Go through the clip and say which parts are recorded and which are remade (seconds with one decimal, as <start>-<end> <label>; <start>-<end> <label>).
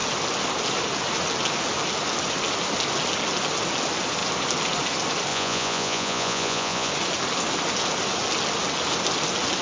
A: 0.0-5.3 recorded; 5.3-6.9 remade; 6.9-9.6 recorded